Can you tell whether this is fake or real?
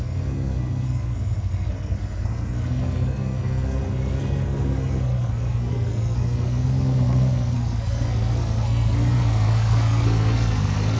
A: fake